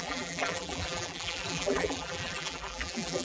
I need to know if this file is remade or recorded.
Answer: remade